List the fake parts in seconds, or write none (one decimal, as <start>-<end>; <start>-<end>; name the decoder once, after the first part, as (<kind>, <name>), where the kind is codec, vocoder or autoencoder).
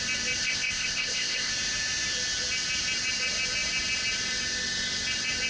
0.4-1.5 (codec, ZipCodec)